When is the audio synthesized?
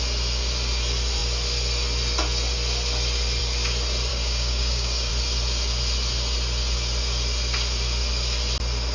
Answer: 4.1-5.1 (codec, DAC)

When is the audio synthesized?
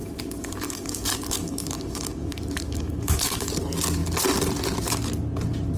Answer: 0.0-3.5 (codec, DAC)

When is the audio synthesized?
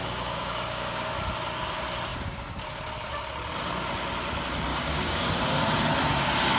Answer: 0.0-1.1 (codec, DAC); 4.7-5.3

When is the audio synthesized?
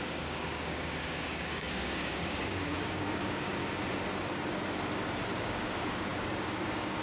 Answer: 0.0-3.6 (codec, DAC); 5.4-7.0